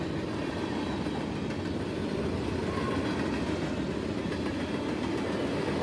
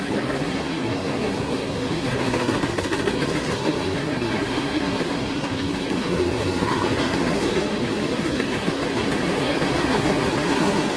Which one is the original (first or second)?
first